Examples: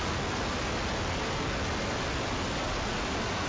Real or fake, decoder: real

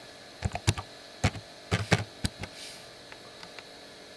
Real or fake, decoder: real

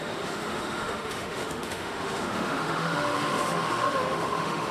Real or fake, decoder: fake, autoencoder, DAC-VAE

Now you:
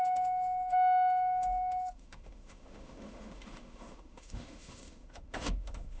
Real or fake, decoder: fake, autoencoder, DAC-VAE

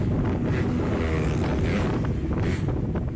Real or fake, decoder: real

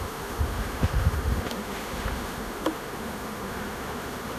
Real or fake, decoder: fake, autoencoder, DAC-VAE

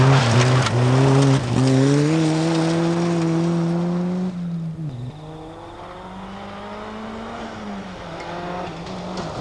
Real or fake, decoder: real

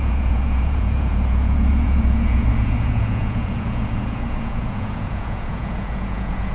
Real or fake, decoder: fake, vocoder, Vocos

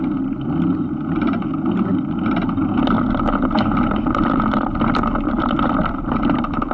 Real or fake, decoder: real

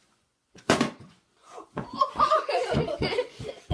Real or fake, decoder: fake, vocoder, Vocos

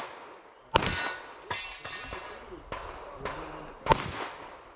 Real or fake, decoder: real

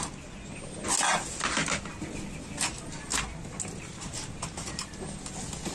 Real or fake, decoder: real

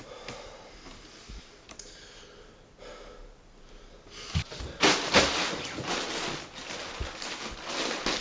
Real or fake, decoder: real